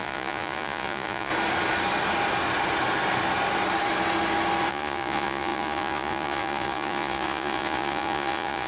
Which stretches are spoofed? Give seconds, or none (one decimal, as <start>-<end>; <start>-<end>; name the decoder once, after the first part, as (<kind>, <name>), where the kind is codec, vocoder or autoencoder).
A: 0.0-1.3 (vocoder, Vocos); 4.7-8.7